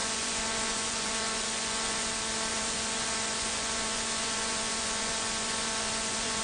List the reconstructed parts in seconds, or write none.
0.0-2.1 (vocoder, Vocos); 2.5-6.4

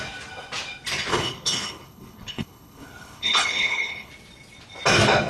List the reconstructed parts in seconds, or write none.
1.1-4.1 (codec, HILCodec)

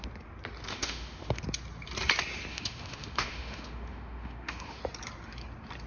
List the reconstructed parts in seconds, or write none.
0.7-1.4 (autoencoder, DAC-VAE); 2.5-4.8

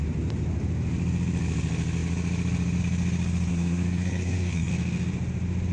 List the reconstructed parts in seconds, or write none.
3.5-4.7 (codec, SNAC)

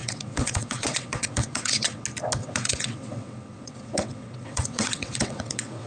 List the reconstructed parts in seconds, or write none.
0.0-2.0 (vocoder, WaveNeXt); 2.4-5.9

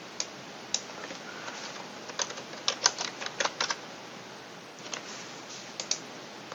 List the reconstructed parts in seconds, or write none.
none